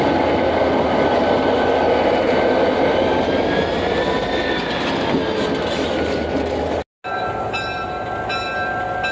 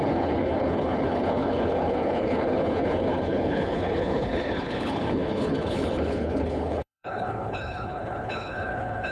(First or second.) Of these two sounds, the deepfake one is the second